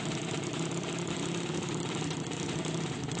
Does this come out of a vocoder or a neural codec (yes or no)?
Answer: no